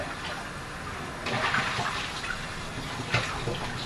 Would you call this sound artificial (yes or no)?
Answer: no